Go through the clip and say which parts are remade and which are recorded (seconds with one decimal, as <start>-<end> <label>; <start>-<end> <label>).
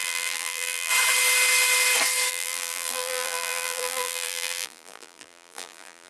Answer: 0.0-0.9 remade; 0.9-2.3 recorded; 2.3-6.1 remade